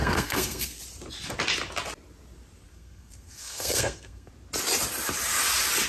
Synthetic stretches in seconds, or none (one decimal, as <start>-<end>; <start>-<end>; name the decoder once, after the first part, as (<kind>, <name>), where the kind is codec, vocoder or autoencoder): 0.0-0.8 (codec, SNAC); 2.7-4.3